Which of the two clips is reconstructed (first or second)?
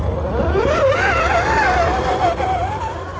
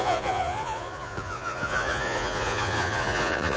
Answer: second